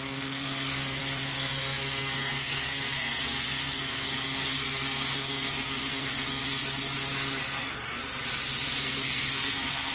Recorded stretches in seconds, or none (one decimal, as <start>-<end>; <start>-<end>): 6.4-7.4; 8.0-8.8